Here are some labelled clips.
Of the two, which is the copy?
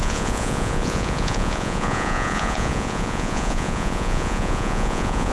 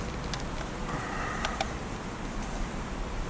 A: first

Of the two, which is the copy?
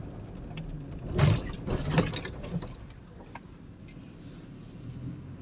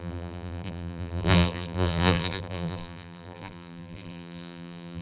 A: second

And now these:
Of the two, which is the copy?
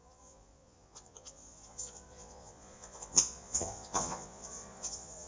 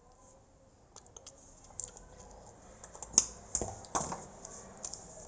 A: first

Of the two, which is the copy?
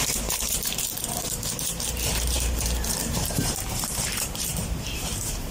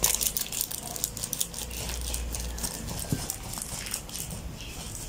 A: first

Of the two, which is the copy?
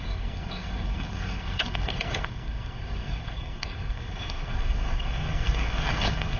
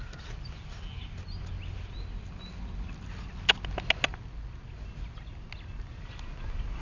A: first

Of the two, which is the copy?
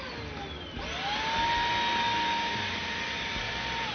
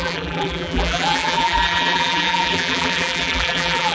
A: second